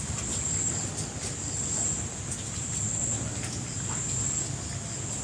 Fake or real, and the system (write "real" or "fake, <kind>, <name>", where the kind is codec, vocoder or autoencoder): real